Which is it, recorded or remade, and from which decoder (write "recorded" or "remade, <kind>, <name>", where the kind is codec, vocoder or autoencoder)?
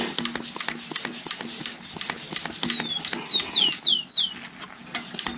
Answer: recorded